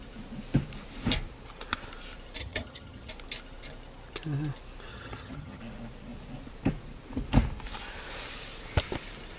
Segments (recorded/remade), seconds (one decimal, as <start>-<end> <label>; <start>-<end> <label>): 0.0-2.4 recorded; 2.4-3.1 remade; 3.1-4.9 recorded; 4.9-5.6 remade; 5.6-9.4 recorded